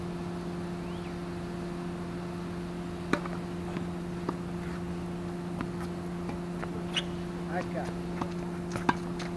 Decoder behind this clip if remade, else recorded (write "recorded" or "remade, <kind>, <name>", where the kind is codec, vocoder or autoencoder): recorded